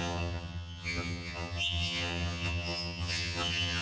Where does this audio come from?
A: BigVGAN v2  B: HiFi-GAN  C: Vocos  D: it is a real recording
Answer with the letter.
B